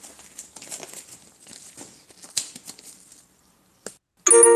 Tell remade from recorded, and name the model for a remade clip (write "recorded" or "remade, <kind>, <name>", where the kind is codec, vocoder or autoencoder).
recorded